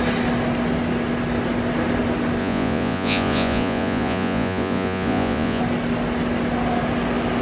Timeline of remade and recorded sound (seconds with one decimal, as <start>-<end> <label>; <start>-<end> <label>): 0.0-2.4 recorded; 2.4-5.6 remade; 5.6-7.4 recorded